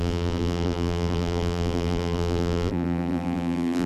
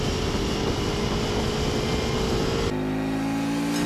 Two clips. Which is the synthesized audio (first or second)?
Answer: first